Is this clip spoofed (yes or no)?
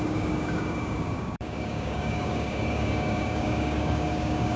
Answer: yes